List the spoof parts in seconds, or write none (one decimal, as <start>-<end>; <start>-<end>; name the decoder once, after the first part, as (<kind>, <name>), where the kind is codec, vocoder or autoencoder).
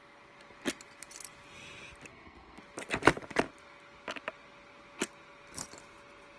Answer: 2.1-2.6 (codec, SNAC)